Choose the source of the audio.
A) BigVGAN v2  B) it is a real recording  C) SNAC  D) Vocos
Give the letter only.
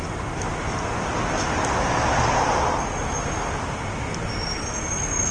B